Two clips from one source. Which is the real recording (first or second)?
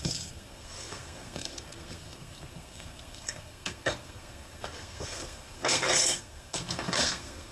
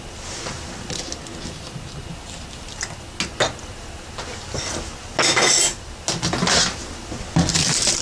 second